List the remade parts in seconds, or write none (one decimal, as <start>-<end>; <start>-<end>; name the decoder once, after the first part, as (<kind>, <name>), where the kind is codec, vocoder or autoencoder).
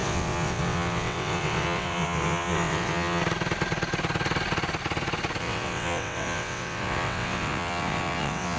0.0-3.2 (vocoder, WaveNeXt); 5.4-8.6